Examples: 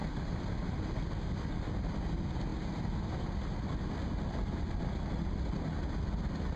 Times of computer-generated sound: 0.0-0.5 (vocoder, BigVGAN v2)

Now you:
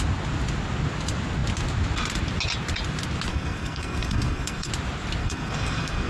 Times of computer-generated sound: 3.3-4.7 (codec, SNAC); 5.2-6.1

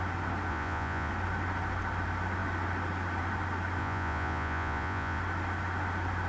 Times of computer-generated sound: 0.5-1.1 (vocoder, Vocos); 3.8-5.2

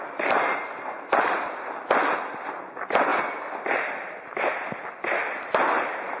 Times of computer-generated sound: none

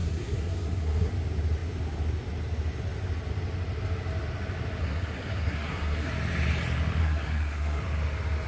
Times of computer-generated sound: 0.0-1.1 (codec, SNAC); 4.8-6.1; 7.0-7.8

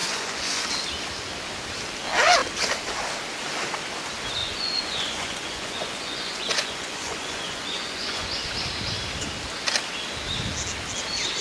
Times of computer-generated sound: 0.0-0.7 (vocoder, Vocos); 4.4-8.5

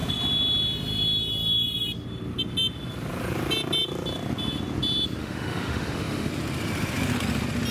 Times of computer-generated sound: 5.2-6.3 (autoencoder, DAC-VAE)